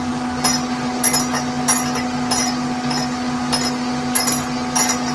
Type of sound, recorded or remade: recorded